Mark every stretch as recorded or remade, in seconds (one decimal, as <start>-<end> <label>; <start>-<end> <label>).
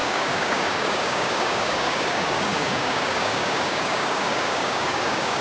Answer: 0.0-5.4 remade